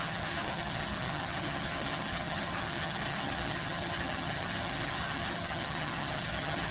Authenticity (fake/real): fake